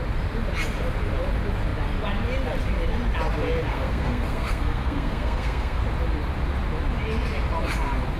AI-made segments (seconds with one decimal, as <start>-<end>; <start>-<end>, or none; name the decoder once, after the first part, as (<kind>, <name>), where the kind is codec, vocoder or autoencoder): 3.7-5.8 (codec, SNAC)